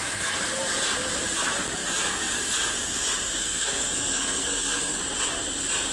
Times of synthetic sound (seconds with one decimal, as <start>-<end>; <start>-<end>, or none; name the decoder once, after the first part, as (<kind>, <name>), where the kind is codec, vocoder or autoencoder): 3.4-5.0 (codec, SNAC)